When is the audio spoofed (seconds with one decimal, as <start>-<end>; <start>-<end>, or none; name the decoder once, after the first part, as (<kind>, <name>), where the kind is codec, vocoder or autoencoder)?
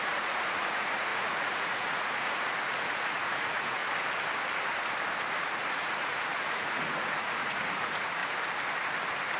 0.0-3.8 (vocoder, Vocos); 5.4-8.2